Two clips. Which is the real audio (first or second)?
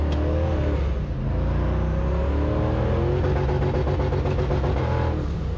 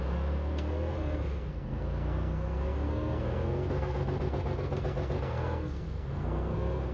first